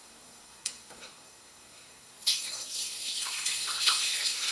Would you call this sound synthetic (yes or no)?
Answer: yes